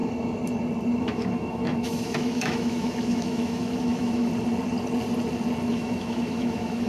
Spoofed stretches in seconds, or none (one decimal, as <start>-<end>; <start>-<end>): 1.0-4.3; 5.7-6.9